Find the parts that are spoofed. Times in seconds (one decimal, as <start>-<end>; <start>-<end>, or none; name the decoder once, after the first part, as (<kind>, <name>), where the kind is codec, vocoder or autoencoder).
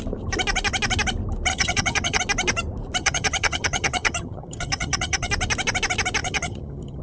1.5-2.2 (vocoder, HiFi-GAN); 3.0-5.3; 6.2-7.0